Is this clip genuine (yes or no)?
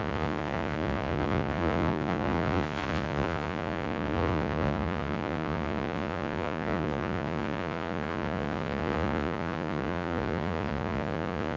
no